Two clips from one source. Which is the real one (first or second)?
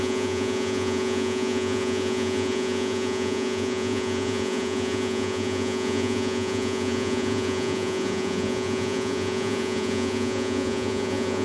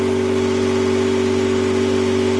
second